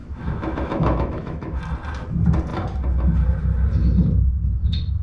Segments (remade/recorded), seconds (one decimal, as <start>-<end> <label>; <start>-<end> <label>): 0.0-1.6 remade; 1.6-5.0 recorded

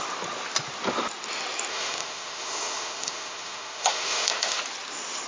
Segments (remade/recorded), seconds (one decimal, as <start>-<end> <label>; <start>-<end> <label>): 0.0-1.7 recorded; 1.7-4.6 remade; 4.6-5.3 recorded